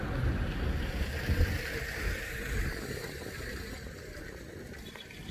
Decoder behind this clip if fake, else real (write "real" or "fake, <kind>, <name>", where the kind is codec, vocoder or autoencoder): real